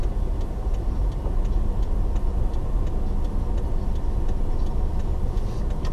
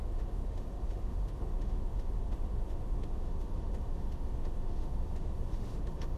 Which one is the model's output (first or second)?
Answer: second